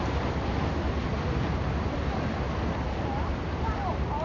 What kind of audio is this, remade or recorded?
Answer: recorded